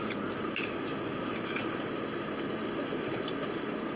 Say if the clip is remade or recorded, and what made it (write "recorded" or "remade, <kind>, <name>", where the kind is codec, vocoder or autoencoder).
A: recorded